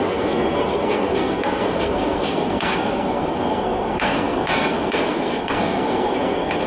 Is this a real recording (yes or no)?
no